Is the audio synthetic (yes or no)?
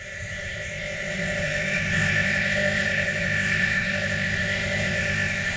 yes